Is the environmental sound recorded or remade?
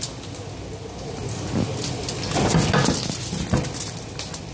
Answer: recorded